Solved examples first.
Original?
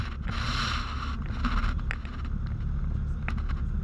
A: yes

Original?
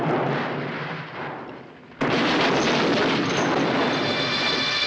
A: yes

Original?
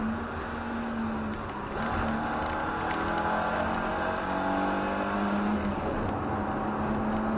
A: yes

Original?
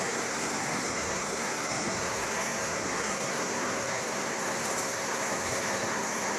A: no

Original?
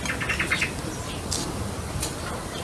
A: yes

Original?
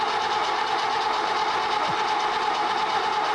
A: yes